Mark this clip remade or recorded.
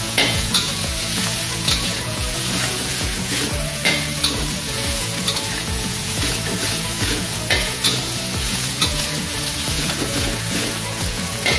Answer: remade